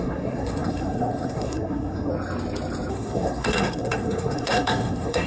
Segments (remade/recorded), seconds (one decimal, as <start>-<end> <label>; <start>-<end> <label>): 0.0-2.1 remade; 2.1-2.9 recorded; 2.9-5.3 remade